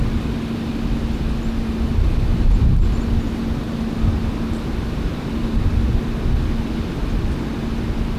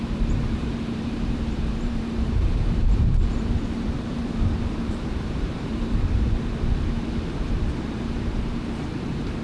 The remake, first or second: second